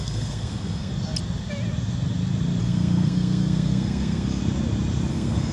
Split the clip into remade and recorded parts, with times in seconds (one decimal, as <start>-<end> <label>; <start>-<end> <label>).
0.0-0.9 remade; 0.9-2.6 recorded; 2.6-4.4 remade; 4.4-5.1 recorded; 5.1-5.5 remade